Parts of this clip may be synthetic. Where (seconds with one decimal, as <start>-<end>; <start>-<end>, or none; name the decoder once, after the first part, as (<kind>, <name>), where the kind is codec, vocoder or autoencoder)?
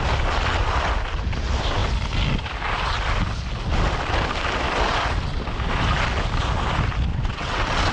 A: 7.1-7.9 (vocoder, WaveNeXt)